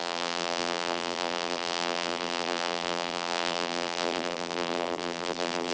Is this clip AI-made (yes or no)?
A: yes